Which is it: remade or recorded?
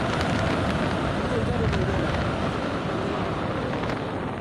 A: recorded